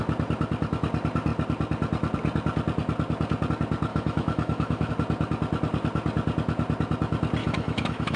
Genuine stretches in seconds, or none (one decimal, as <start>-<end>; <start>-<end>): 0.0-3.9; 4.9-7.4